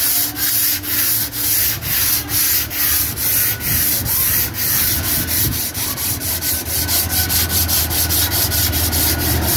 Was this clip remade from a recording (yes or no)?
no